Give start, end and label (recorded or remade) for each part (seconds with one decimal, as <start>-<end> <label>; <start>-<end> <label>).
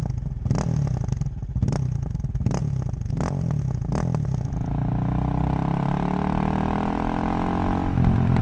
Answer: 0.0-8.4 recorded